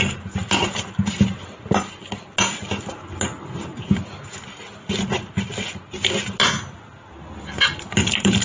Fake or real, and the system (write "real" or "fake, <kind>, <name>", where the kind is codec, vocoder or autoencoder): real